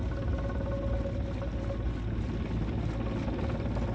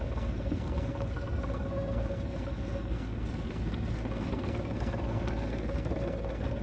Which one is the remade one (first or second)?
second